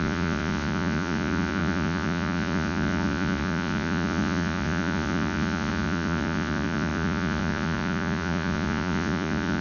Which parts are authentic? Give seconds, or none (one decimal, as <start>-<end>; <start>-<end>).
none